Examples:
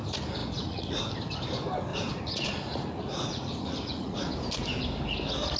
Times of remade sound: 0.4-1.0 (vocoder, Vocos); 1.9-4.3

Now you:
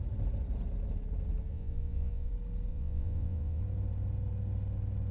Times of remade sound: 1.5-2.3 (vocoder, Vocos); 2.7-3.6

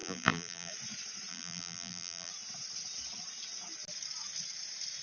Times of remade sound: 0.0-0.7 (vocoder, BigVGAN v2); 1.3-2.3

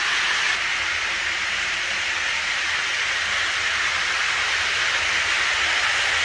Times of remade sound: none

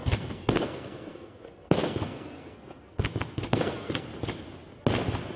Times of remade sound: 0.0-4.1 (codec, SNAC)

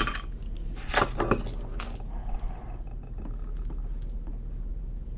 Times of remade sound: none